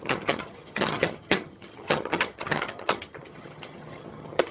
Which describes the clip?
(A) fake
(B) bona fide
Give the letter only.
A